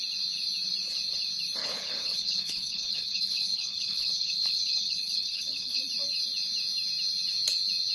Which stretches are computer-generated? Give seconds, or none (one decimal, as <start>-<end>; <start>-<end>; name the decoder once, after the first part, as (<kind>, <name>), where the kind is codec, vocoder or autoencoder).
1.6-5.8 (codec, HILCodec)